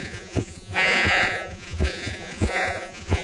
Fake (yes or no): yes